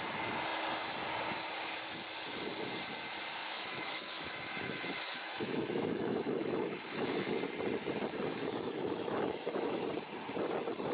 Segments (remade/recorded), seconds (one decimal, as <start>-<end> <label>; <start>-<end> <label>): 0.0-3.4 recorded; 3.4-7.4 remade; 7.4-8.3 recorded; 8.3-9.8 remade; 9.8-10.9 recorded